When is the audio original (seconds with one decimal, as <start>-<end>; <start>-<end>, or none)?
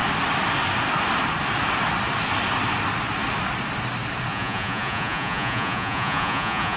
0.0-4.3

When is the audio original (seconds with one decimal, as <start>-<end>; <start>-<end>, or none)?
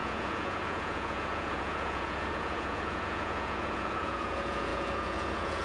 none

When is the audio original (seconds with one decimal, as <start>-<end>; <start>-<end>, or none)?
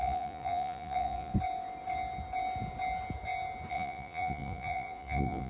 1.3-3.7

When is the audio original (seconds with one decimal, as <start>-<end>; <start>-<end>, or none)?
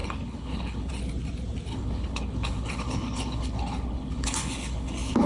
0.9-1.7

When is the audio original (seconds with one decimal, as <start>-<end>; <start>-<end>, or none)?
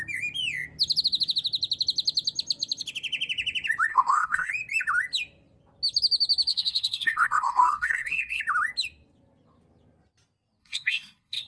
0.0-3.9; 4.5-6.5; 8.4-10.6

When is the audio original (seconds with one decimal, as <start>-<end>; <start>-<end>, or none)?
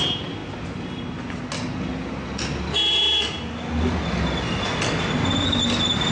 0.0-6.1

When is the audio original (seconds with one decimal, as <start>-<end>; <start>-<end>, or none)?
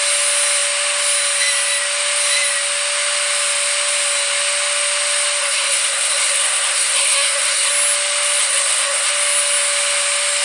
0.0-5.4; 7.7-8.4; 9.1-10.4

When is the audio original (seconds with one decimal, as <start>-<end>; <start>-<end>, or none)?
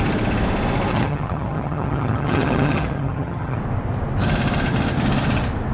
0.0-0.9; 3.6-5.7